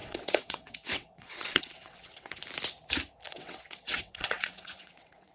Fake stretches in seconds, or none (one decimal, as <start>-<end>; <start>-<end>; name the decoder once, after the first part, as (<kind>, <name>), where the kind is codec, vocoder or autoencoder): 0.0-2.4 (vocoder, WaveNeXt); 3.3-5.3